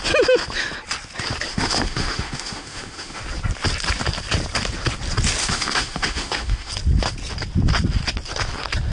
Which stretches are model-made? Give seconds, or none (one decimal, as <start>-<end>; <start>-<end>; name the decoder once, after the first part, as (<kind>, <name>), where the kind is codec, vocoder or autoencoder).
1.5-3.2 (autoencoder, DAC-VAE); 5.4-6.7